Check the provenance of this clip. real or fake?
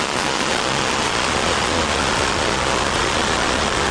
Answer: fake